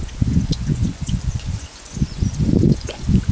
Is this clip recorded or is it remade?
remade